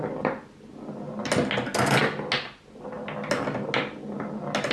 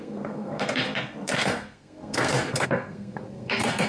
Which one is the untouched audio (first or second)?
first